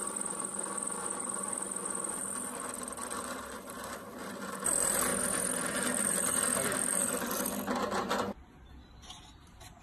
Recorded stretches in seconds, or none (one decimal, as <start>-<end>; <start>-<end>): 0.5-3.1; 5.1-6.0